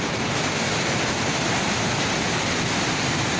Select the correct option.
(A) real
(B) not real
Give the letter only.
A